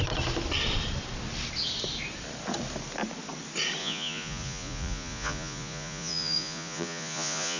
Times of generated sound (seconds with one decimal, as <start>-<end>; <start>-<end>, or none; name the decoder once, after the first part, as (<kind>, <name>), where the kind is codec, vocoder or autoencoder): 3.8-7.6 (vocoder, Vocos)